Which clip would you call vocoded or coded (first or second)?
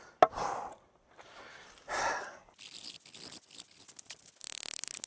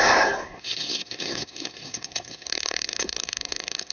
second